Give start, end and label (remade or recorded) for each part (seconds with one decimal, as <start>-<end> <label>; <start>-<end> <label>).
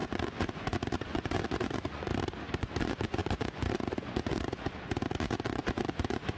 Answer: 0.0-2.1 remade; 2.1-2.6 recorded; 2.6-6.4 remade